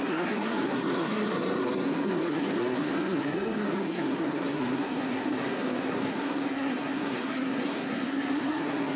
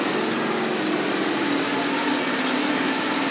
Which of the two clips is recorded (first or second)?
second